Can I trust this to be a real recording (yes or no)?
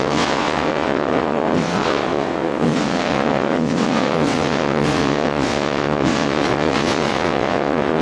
no